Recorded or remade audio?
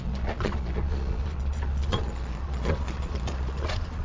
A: remade